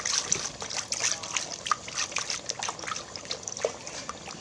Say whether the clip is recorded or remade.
recorded